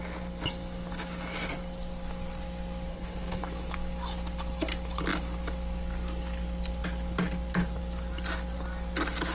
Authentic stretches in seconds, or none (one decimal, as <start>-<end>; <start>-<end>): 0.0-2.9; 3.4-9.3